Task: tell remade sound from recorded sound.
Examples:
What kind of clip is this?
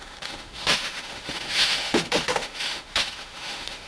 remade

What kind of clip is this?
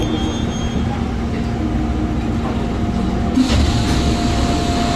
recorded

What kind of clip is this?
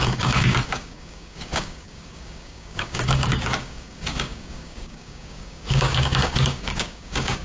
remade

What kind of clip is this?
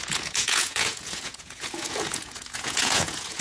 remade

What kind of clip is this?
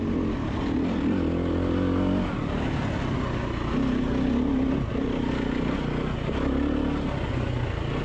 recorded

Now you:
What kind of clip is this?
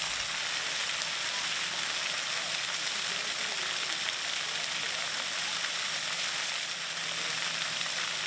recorded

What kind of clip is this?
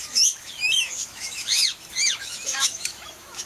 remade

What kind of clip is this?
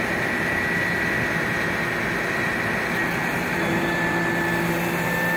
recorded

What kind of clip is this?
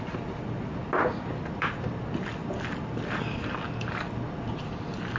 recorded